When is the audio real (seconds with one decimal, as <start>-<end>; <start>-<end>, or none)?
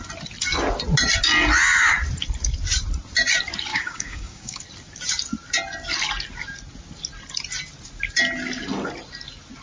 0.0-3.7; 4.6-9.6